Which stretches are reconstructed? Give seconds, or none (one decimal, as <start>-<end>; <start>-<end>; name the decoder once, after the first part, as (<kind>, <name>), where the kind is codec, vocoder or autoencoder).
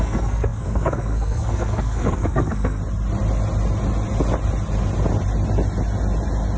0.0-2.8 (codec, SNAC)